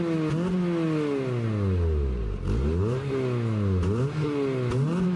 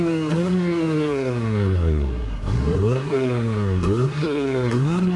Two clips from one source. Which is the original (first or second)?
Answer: first